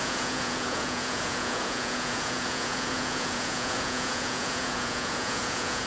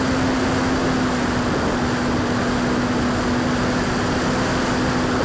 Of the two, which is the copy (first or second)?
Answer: first